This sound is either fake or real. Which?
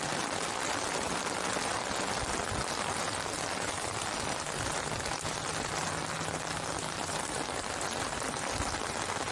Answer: real